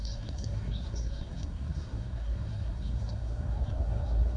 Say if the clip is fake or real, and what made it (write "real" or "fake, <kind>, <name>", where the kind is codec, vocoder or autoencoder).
fake, codec, SNAC